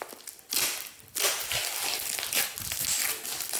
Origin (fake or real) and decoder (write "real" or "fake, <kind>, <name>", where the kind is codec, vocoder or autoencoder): real